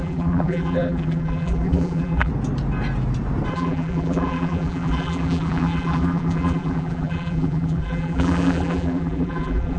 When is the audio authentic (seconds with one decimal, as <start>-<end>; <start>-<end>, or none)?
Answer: 2.3-3.5